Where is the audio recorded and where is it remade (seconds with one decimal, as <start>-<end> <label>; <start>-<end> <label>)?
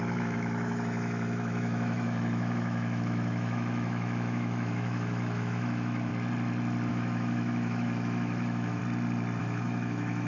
0.0-6.1 remade; 6.1-6.9 recorded; 6.9-8.8 remade; 8.8-9.4 recorded; 9.4-10.3 remade